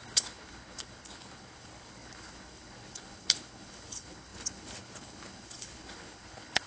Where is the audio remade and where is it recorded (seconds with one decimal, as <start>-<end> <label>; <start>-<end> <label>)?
0.0-6.7 remade